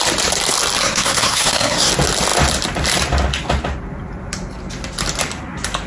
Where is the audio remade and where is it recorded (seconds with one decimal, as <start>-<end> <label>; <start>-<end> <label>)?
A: 0.0-0.8 recorded; 0.8-1.9 remade; 1.9-5.9 recorded